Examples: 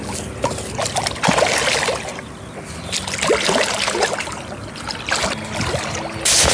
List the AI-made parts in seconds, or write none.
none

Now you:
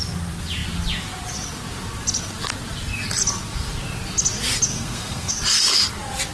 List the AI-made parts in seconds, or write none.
4.7-5.3 (codec, SNAC)

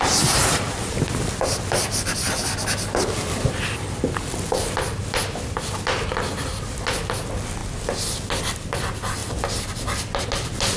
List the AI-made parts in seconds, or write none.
none

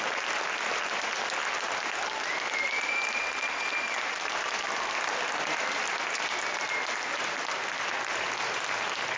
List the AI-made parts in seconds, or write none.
none

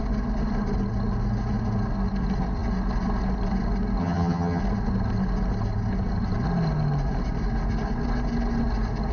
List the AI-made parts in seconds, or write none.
4.0-4.6 (vocoder, HiFi-GAN)

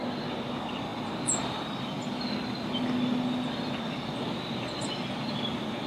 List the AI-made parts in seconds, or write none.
none